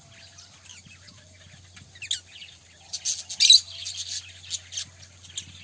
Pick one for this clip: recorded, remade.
recorded